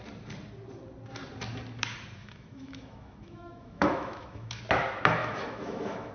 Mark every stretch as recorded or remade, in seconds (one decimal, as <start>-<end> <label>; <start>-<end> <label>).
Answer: 0.0-2.2 recorded; 2.2-4.6 remade; 4.6-5.2 recorded; 5.2-6.1 remade